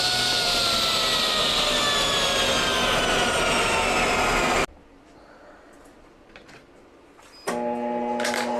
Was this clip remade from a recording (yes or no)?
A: no